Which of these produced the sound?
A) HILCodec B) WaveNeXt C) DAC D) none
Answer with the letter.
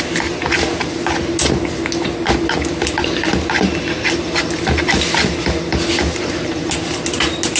D